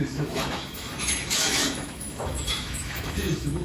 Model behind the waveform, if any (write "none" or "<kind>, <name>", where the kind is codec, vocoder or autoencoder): autoencoder, DAC-VAE